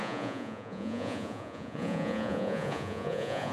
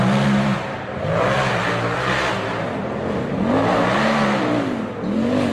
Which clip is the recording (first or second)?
second